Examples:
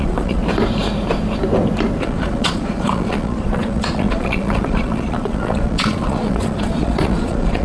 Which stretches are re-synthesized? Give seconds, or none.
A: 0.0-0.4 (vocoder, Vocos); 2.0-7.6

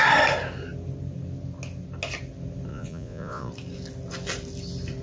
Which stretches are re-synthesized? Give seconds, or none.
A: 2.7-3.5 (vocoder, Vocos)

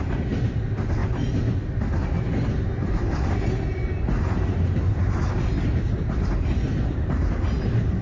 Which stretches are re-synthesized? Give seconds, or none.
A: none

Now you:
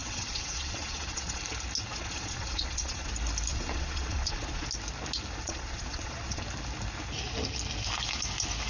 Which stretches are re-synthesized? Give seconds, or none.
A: 0.0-1.4 (vocoder, Vocos); 1.9-3.1; 3.5-4.7; 5.4-6.4